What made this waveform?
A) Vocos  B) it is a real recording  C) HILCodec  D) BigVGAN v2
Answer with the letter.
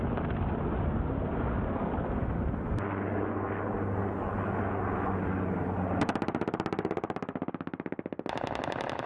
B